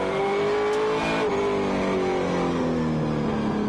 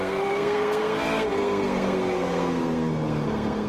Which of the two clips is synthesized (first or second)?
second